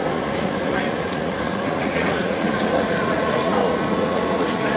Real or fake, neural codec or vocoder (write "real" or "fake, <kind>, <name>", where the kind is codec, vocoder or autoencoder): fake, vocoder, Vocos